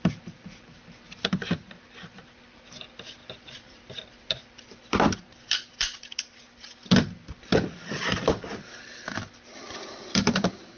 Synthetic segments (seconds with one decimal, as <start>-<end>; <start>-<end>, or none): 3.2-5.1

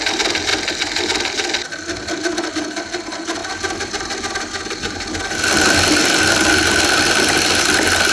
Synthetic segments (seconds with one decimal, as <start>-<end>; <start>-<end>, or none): none

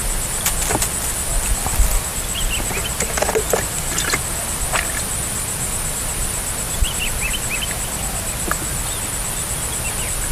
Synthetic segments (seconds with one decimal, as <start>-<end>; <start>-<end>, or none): 5.1-7.5

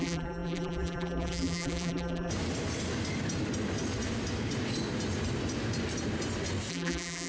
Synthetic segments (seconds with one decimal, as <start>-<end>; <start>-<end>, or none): 0.0-2.3; 6.7-7.3

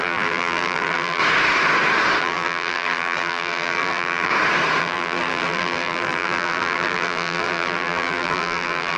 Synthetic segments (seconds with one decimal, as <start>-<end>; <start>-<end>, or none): 0.0-1.2; 2.2-4.3; 4.8-9.0

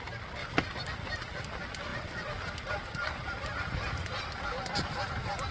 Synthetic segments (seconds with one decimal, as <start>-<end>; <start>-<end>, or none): none

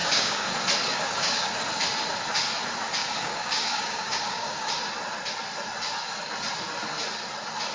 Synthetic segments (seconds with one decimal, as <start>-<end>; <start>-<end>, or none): 0.0-0.5; 0.9-1.5; 3.0-4.7

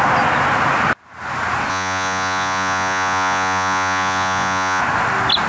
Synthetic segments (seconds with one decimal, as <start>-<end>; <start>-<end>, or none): 1.7-4.8